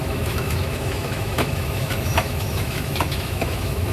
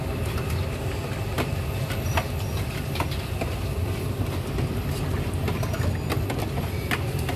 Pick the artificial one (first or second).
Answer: first